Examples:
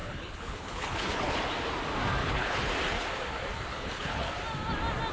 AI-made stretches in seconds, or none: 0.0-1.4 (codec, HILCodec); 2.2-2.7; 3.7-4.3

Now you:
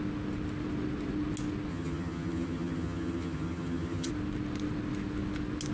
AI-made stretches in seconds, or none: 1.7-4.1 (vocoder, HiFi-GAN)

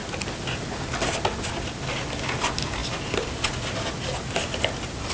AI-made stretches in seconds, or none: none

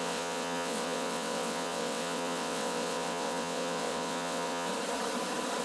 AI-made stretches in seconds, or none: 0.0-4.7 (vocoder, WaveNeXt)

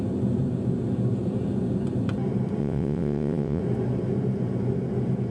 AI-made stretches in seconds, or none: 2.6-3.6 (vocoder, WaveNeXt)

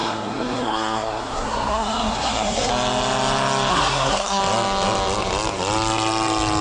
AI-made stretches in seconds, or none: 0.0-2.7 (codec, SNAC); 3.7-4.4

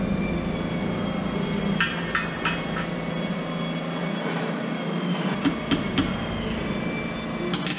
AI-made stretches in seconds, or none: none